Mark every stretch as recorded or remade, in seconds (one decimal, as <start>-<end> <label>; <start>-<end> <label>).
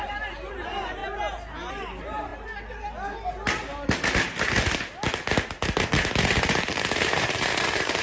0.0-1.0 remade; 1.0-1.7 recorded; 1.7-2.3 remade; 2.3-6.2 recorded; 6.2-8.0 remade